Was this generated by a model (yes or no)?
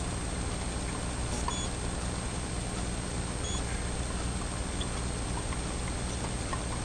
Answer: no